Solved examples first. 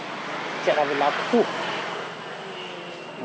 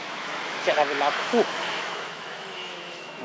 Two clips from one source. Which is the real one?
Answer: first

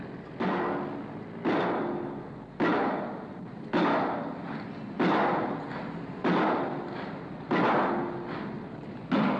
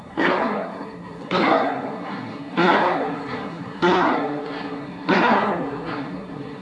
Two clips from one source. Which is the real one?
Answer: first